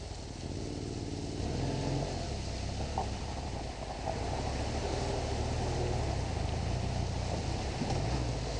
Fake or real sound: real